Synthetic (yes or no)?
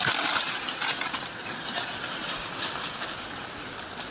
no